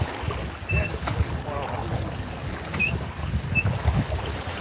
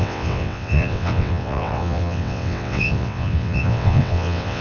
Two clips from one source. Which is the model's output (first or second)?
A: second